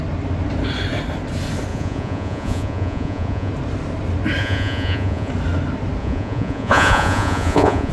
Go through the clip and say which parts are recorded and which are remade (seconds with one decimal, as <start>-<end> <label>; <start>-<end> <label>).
0.0-1.7 recorded; 1.7-3.5 remade; 3.5-4.4 recorded; 4.4-5.3 remade; 5.3-6.0 recorded; 6.0-7.9 remade